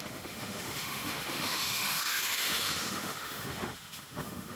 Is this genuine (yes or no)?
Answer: no